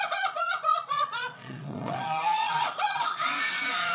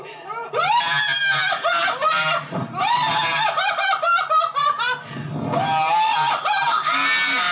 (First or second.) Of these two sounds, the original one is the second